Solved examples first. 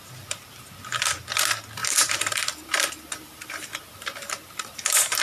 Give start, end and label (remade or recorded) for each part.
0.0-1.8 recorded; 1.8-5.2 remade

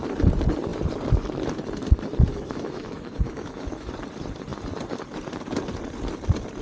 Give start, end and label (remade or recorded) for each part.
0.0-2.3 recorded; 2.3-3.9 remade; 3.9-6.6 recorded

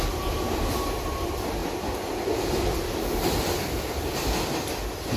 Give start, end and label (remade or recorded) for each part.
0.0-5.2 recorded